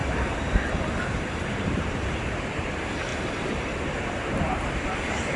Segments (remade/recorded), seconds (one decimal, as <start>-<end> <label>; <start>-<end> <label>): 0.0-5.4 remade